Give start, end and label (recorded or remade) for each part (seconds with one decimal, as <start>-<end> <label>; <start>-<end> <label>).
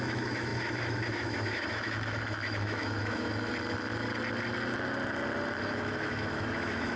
0.0-3.5 remade; 3.5-5.6 recorded; 5.6-7.0 remade